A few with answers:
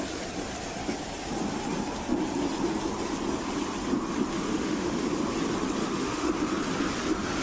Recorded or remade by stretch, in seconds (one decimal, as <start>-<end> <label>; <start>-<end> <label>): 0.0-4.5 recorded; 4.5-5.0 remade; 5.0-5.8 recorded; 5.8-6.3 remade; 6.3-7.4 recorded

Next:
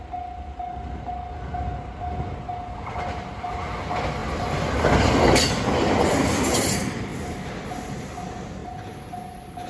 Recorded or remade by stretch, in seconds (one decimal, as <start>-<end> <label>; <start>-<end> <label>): 0.0-9.7 recorded

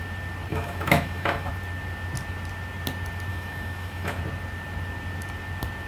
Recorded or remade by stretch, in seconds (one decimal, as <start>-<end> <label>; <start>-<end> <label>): 0.0-0.5 recorded; 0.5-1.5 remade; 1.5-3.3 recorded; 3.3-4.2 remade; 4.2-5.9 recorded